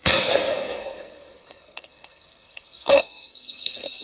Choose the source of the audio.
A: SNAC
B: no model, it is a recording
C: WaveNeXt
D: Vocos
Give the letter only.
A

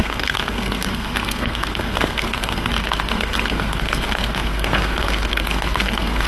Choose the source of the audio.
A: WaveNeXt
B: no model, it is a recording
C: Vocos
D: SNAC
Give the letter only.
D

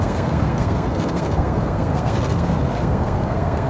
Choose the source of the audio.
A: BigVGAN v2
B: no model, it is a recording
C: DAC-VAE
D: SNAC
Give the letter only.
D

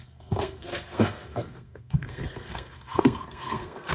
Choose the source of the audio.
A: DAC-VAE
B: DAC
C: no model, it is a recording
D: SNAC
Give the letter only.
D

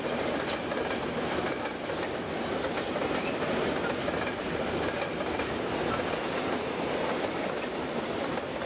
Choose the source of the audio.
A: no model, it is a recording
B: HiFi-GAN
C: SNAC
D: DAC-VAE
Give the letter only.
A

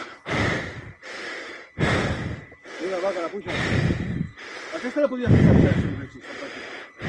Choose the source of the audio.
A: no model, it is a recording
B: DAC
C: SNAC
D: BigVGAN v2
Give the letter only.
A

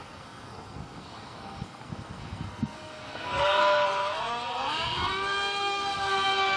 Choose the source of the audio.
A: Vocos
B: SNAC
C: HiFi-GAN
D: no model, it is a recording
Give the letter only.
B